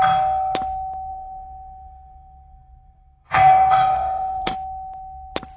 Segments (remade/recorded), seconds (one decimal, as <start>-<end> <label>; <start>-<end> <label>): 0.0-1.1 recorded; 1.1-4.5 remade; 4.5-5.6 recorded